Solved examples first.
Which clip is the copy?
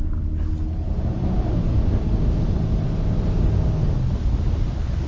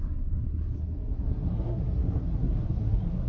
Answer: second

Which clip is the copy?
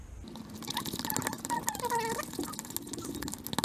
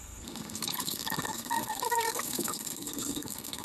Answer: second